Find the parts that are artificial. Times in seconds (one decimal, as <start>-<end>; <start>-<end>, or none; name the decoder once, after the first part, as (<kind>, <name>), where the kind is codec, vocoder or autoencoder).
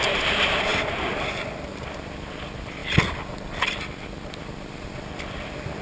none